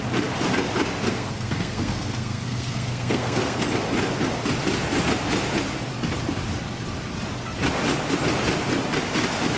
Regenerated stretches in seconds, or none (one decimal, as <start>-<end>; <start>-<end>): 1.1-3.6